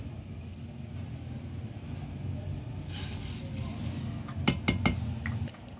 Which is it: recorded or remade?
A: recorded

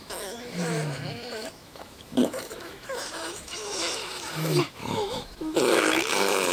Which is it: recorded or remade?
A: remade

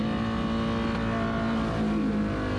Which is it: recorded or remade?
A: recorded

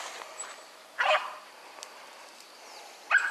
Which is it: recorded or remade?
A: recorded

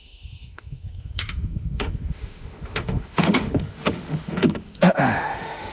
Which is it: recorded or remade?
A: remade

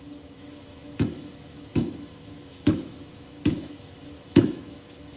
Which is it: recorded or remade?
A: remade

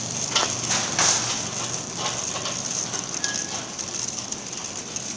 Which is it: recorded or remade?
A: recorded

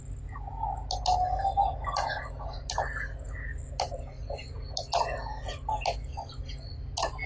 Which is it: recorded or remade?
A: recorded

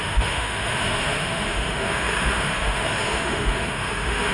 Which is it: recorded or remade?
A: remade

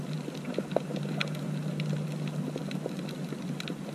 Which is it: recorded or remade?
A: recorded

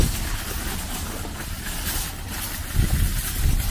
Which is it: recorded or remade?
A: recorded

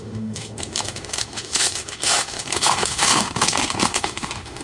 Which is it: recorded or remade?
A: remade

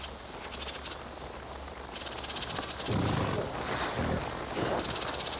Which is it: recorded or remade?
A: recorded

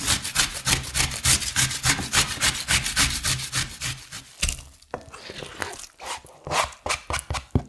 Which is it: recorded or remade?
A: recorded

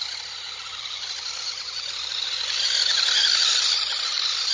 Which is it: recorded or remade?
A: recorded